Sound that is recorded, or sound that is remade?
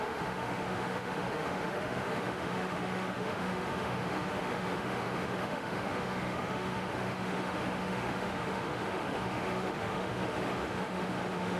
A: remade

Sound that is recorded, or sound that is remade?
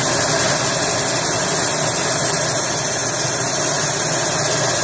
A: recorded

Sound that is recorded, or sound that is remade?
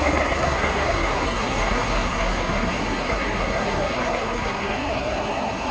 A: remade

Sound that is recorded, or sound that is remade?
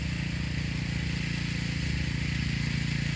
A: recorded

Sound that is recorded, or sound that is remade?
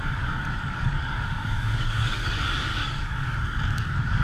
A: remade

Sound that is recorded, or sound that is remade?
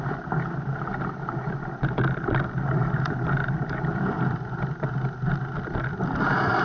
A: recorded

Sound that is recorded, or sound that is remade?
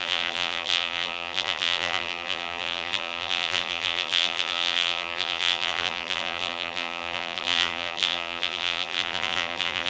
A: remade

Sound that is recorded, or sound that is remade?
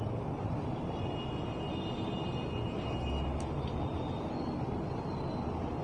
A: recorded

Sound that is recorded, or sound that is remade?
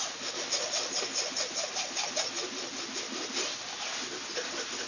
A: recorded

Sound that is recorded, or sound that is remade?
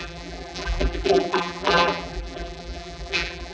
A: remade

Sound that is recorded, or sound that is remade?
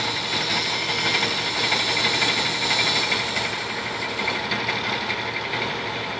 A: recorded